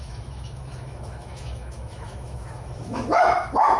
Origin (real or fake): fake